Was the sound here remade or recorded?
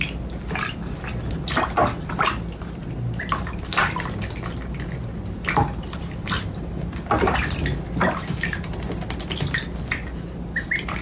recorded